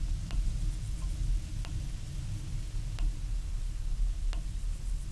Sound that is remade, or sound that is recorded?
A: recorded